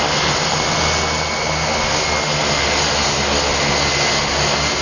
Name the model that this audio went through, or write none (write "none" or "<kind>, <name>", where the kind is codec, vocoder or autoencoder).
none